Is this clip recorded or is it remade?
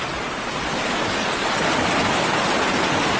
recorded